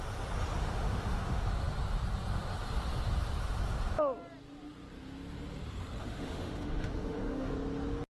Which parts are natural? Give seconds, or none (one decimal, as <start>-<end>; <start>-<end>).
0.0-0.6; 1.5-6.0; 7.5-8.2